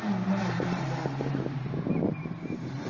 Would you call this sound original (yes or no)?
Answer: no